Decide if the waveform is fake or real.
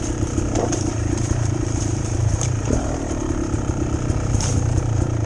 fake